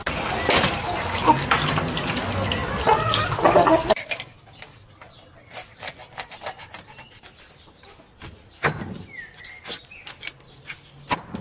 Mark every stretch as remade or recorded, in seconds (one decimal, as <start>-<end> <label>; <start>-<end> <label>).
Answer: 0.0-11.4 recorded